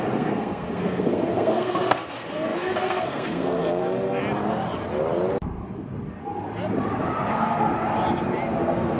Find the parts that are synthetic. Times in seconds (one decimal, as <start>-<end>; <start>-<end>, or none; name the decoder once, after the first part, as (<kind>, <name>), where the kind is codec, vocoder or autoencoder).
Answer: 0.0-4.2 (codec, SNAC); 7.3-7.7; 8.6-9.0